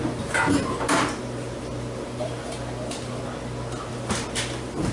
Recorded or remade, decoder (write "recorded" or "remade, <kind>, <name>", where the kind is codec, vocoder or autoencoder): recorded